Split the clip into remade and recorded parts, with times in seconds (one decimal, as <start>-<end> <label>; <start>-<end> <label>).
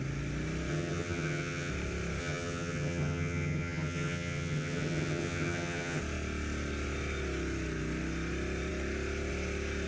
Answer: 0.0-0.7 recorded; 0.7-1.7 remade; 1.7-2.2 recorded; 2.2-6.0 remade; 6.0-9.9 recorded